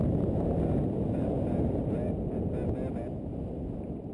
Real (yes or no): yes